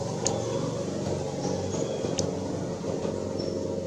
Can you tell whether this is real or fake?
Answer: real